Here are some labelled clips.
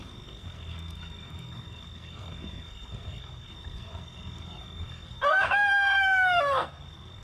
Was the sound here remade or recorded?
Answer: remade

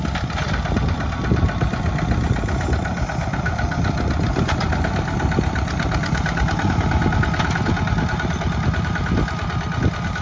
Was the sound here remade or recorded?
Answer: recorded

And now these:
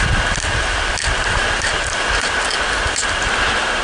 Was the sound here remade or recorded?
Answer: recorded